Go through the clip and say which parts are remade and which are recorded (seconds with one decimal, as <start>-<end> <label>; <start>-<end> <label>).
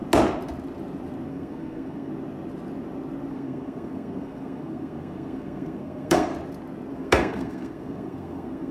0.0-1.3 recorded; 1.3-2.1 remade; 2.1-3.3 recorded; 3.3-6.3 remade; 6.3-6.9 recorded; 6.9-8.7 remade